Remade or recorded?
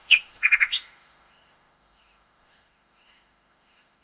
remade